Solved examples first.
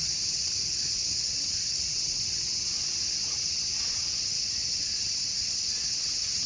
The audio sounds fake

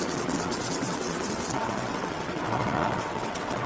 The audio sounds fake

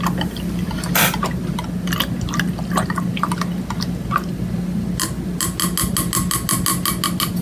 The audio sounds real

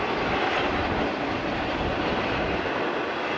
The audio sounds real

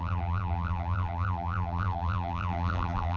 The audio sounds fake